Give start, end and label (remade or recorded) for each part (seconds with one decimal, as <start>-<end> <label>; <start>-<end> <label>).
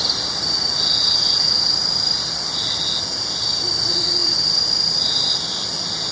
0.0-1.0 remade; 1.0-1.8 recorded; 1.8-3.4 remade; 3.4-4.2 recorded; 4.2-6.1 remade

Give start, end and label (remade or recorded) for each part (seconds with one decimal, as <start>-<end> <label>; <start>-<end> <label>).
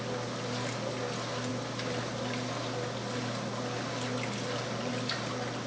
0.0-5.7 recorded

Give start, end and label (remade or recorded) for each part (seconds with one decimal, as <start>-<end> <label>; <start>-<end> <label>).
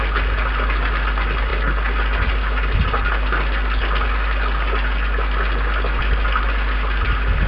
0.0-7.5 recorded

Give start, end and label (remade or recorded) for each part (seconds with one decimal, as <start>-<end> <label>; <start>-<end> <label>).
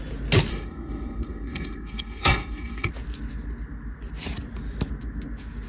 0.0-0.5 recorded; 0.5-2.9 remade; 2.9-5.7 recorded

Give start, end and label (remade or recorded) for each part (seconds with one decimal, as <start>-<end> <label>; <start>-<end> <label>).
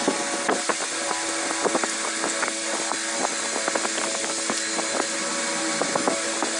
0.0-6.6 recorded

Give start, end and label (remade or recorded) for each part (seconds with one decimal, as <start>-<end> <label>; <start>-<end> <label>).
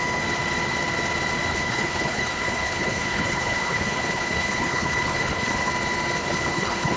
0.0-1.5 recorded; 1.5-5.7 remade; 5.7-6.2 recorded; 6.2-7.0 remade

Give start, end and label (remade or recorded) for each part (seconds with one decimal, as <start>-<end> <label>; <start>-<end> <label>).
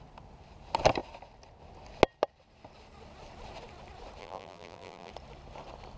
0.0-4.2 recorded; 4.2-5.1 remade; 5.1-6.0 recorded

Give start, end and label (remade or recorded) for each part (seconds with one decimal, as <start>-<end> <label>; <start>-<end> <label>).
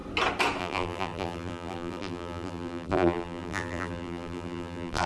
0.0-0.6 recorded; 0.6-5.1 remade